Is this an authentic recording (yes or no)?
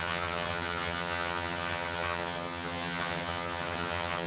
no